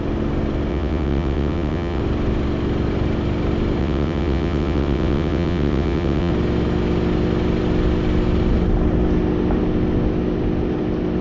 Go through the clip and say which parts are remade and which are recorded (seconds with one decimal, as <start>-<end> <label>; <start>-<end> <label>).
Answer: 0.0-0.7 recorded; 0.7-2.0 remade; 2.0-3.8 recorded; 3.8-6.3 remade; 6.3-11.2 recorded